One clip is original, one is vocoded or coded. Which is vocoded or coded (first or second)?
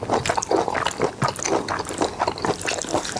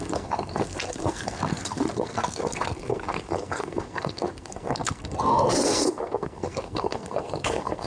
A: second